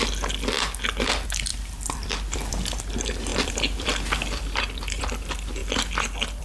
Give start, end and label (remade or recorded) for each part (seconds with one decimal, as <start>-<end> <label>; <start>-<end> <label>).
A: 0.0-1.5 recorded; 1.5-2.8 remade; 2.8-3.3 recorded; 3.3-4.8 remade; 4.8-6.4 recorded